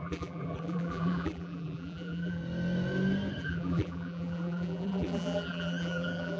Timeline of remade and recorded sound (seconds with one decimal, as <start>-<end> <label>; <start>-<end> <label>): 0.0-2.4 remade; 2.4-3.4 recorded; 3.4-6.4 remade